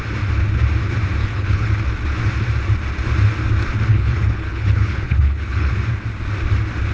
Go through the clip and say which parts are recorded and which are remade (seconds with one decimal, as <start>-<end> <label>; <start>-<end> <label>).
0.0-1.2 recorded; 1.2-1.7 remade; 1.7-3.9 recorded; 3.9-5.7 remade; 5.7-6.9 recorded